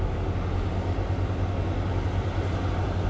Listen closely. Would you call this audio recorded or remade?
recorded